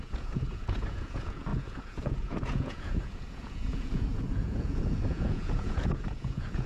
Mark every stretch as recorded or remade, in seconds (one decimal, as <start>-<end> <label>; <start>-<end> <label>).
0.0-6.7 remade